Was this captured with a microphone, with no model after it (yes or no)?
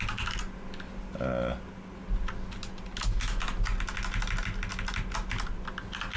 yes